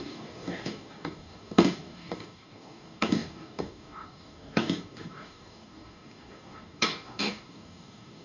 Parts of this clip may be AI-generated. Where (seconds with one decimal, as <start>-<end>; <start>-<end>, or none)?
0.0-8.2